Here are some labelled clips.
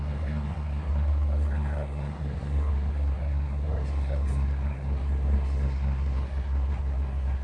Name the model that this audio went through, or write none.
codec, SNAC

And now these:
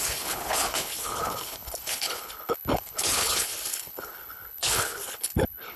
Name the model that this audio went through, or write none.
codec, HILCodec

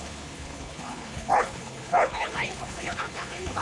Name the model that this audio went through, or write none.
codec, HILCodec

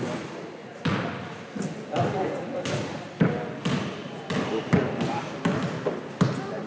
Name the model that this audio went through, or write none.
none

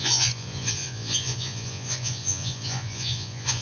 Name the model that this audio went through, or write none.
vocoder, Vocos